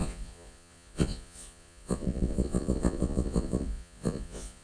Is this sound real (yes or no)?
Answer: no